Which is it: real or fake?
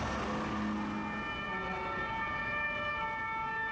real